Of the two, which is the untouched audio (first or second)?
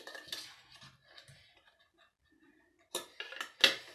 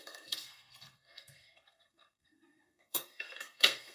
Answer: first